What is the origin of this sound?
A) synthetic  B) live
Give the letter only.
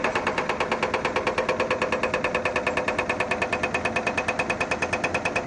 B